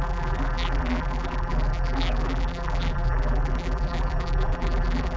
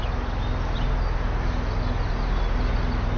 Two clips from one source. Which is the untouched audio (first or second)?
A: second